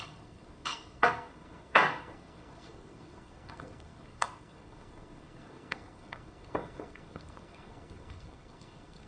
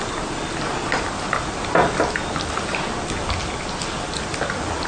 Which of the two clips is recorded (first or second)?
second